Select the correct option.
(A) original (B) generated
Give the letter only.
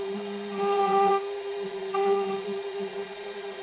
B